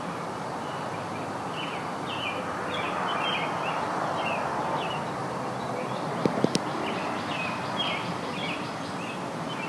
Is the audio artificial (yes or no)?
yes